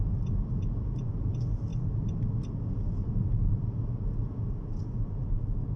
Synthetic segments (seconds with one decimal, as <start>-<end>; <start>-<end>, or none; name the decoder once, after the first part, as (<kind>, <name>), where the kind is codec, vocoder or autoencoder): 0.0-1.7 (vocoder, Vocos); 2.7-5.8